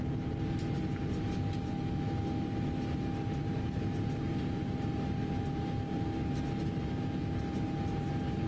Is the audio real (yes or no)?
yes